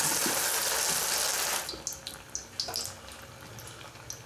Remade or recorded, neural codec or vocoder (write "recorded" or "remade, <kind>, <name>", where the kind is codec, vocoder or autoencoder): recorded